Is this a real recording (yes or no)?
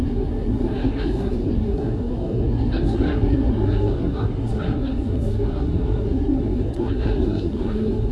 no